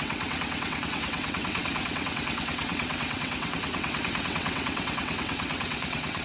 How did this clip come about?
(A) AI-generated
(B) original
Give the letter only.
A